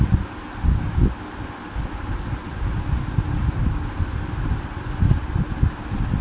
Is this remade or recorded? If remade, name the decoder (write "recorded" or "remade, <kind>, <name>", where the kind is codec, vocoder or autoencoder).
recorded